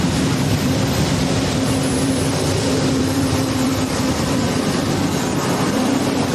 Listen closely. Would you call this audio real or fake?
fake